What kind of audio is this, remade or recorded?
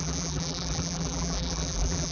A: remade